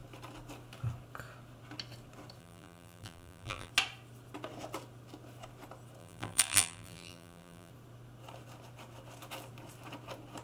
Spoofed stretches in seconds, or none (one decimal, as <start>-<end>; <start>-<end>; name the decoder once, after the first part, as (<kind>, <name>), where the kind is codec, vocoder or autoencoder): 2.4-3.7 (vocoder, BigVGAN v2); 6.0-7.7